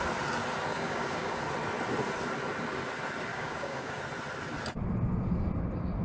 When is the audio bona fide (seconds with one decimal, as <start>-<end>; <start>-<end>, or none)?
0.0-0.7; 1.4-3.3; 4.0-6.0